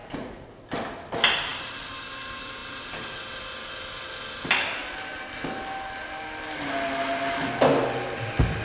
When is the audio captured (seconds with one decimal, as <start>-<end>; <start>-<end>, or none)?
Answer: 0.6-8.6